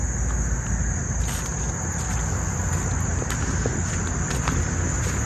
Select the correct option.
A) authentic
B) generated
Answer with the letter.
A